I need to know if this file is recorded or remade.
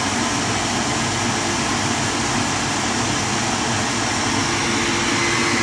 recorded